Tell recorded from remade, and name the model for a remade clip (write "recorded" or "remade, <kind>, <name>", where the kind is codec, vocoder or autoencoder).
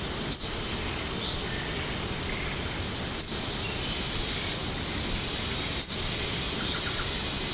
recorded